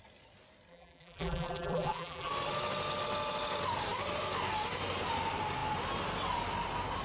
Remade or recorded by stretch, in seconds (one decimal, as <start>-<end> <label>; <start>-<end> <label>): 0.0-0.7 recorded; 0.7-2.3 remade; 2.3-7.0 recorded